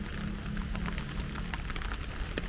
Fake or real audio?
real